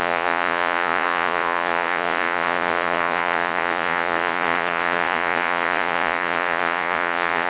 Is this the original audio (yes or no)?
no